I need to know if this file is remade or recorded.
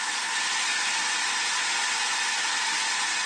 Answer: recorded